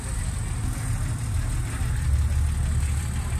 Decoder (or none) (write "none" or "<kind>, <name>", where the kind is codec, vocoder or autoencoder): none